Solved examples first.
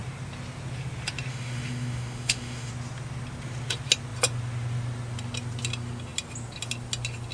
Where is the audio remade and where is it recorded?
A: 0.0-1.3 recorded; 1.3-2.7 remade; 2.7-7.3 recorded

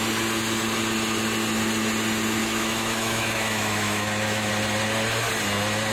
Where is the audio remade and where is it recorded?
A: 0.0-2.4 recorded; 2.4-4.5 remade; 4.5-5.9 recorded